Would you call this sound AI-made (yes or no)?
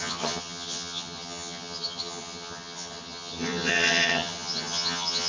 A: yes